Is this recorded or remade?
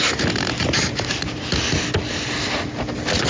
recorded